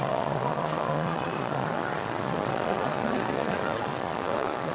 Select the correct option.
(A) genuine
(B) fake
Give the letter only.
B